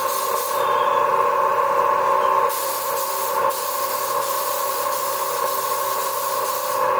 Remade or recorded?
remade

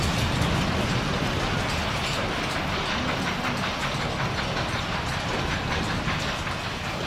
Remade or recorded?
recorded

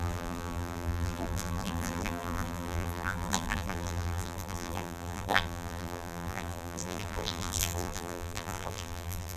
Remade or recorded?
remade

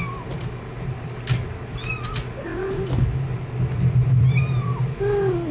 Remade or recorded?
recorded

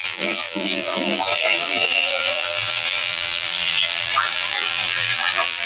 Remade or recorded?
remade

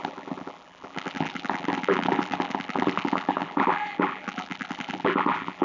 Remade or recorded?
remade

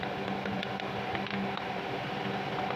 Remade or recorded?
recorded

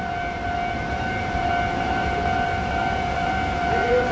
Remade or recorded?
remade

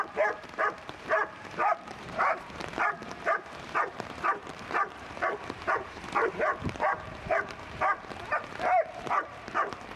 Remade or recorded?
remade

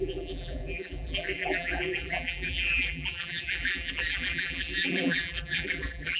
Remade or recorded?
remade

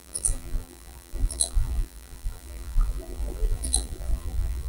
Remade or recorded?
remade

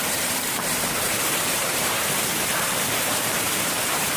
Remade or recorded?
remade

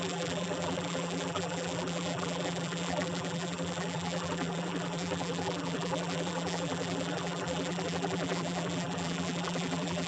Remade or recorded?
remade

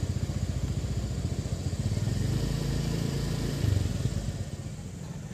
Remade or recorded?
recorded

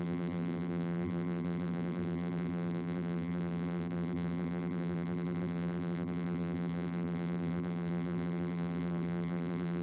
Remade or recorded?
remade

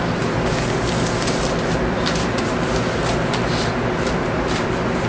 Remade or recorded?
remade